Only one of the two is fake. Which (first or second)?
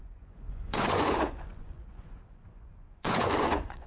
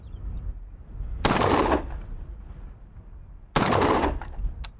first